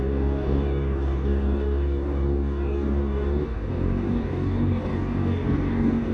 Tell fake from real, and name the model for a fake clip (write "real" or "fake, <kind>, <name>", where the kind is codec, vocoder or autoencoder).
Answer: fake, codec, DAC